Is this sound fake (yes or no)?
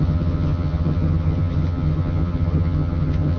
yes